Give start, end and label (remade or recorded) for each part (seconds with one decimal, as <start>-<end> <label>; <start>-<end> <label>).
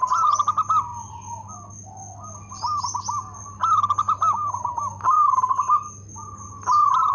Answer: 0.0-3.6 recorded; 3.6-5.4 remade; 5.4-7.1 recorded